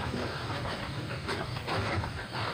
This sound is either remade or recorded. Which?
remade